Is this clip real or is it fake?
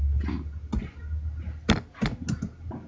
real